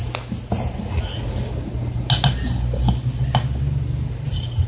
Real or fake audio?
real